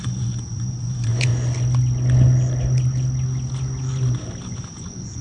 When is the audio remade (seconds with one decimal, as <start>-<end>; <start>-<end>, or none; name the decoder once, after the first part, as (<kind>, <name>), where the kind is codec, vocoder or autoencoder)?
0.0-1.3 (vocoder, Vocos); 4.4-5.2